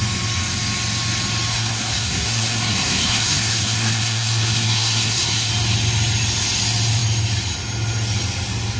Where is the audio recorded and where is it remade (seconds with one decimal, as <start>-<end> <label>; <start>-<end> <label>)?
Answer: 0.0-1.5 recorded; 1.5-5.5 remade; 5.5-8.8 recorded